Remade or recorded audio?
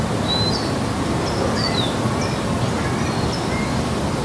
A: recorded